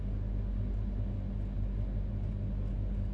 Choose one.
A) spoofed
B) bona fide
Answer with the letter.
B